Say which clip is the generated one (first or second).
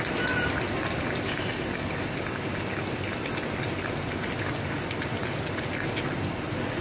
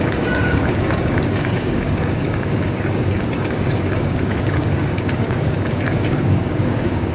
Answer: second